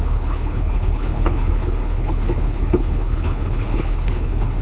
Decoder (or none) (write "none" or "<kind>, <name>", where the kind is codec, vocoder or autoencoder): codec, HILCodec